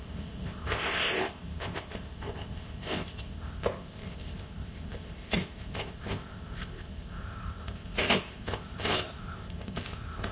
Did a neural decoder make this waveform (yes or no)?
yes